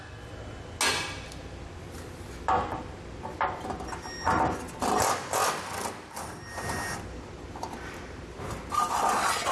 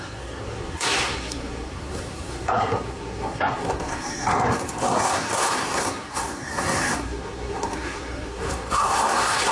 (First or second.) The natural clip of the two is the first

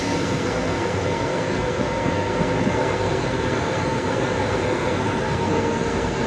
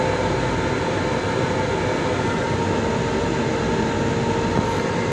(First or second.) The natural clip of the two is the second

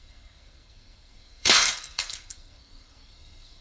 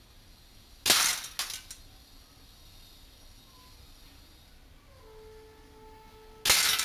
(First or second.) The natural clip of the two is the second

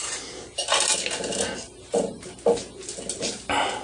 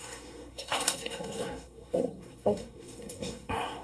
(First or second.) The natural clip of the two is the first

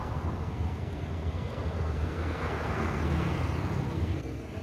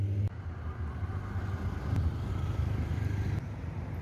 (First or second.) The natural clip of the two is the second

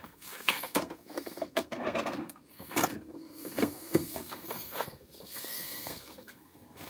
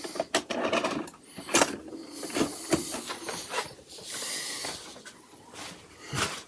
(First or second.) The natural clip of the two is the second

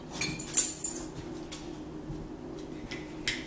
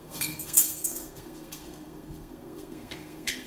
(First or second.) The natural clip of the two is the first